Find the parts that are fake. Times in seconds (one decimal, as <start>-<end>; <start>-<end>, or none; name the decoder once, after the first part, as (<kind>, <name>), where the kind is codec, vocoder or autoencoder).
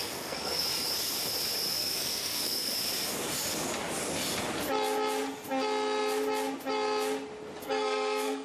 0.0-0.6 (codec, SNAC); 1.7-2.7; 7.6-8.4